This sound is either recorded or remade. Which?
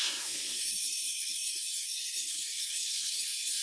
remade